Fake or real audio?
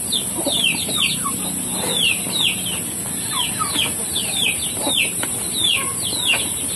real